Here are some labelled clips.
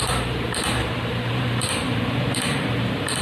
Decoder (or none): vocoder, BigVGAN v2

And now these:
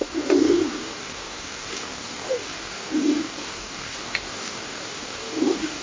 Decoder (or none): codec, DAC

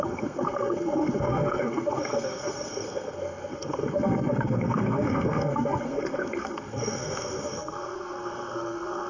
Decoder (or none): codec, SNAC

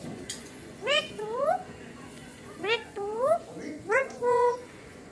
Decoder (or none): vocoder, Vocos